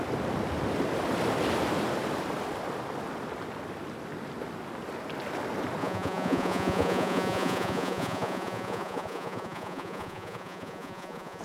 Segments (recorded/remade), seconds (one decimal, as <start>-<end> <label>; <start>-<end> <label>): 0.0-5.8 recorded; 5.8-11.4 remade